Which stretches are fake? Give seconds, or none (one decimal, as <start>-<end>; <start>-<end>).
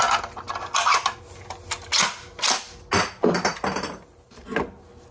none